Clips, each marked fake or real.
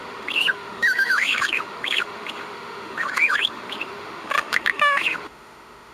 fake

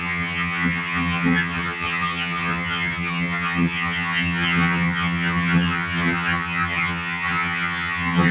fake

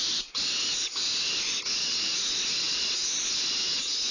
fake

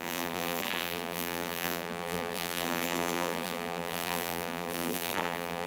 fake